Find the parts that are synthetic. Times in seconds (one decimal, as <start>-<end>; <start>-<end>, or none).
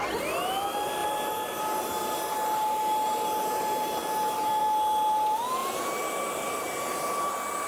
1.0-4.6; 5.6-7.3